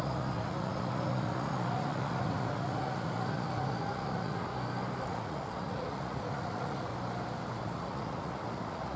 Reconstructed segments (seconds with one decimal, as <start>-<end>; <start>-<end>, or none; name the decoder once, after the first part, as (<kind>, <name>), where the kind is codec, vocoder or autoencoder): 0.0-4.5 (vocoder, Vocos); 5.0-6.9; 7.6-9.0